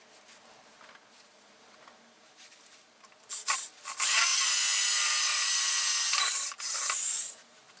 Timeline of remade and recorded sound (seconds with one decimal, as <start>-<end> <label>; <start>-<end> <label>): 0.0-7.8 recorded